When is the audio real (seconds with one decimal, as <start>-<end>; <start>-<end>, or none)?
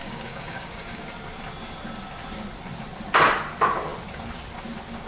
1.0-5.1